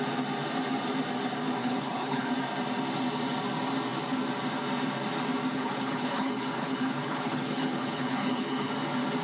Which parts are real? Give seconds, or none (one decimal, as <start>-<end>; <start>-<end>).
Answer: 0.0-1.6; 2.3-5.5; 8.7-9.2